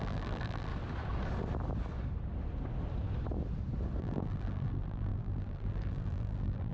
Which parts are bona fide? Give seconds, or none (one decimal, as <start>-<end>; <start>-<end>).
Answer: 0.7-4.0